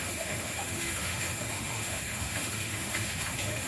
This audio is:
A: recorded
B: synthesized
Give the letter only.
B